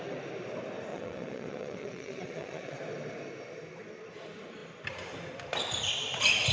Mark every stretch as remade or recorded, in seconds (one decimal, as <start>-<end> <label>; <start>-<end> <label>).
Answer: 0.0-0.9 recorded; 0.9-2.8 remade; 2.8-6.5 recorded

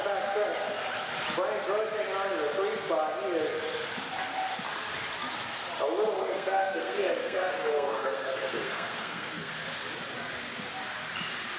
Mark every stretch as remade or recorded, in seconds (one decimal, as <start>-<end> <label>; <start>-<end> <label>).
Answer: 0.0-6.2 recorded; 6.2-9.5 remade; 9.5-11.6 recorded

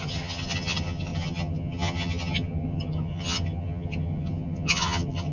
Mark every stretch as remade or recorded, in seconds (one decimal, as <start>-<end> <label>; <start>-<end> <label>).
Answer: 0.0-5.3 remade

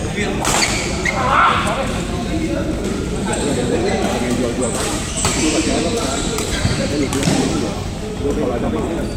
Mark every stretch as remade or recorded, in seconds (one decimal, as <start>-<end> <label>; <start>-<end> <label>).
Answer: 0.0-3.3 recorded; 3.3-7.9 remade; 7.9-9.2 recorded

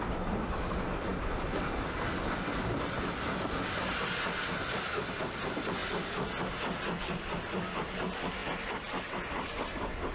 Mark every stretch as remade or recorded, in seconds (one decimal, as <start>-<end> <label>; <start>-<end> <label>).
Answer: 0.0-10.1 recorded

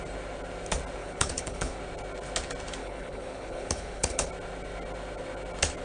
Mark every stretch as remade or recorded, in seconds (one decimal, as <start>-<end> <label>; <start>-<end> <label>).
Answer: 0.0-1.0 recorded; 1.0-1.8 remade; 1.8-2.8 recorded; 2.8-4.3 remade; 4.3-5.8 recorded

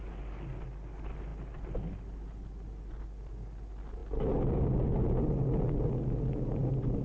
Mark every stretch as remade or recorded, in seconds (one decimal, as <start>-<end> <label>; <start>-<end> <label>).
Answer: 0.0-7.0 recorded